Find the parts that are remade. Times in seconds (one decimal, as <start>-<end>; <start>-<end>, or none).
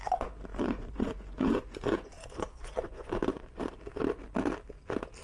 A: 0.5-3.6